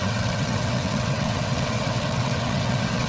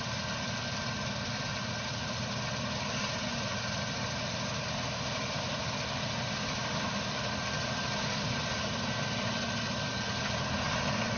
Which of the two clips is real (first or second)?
second